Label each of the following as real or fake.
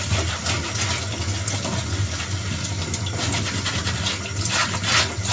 real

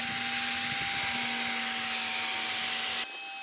real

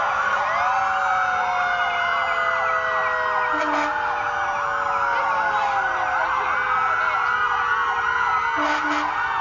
real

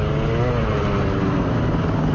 real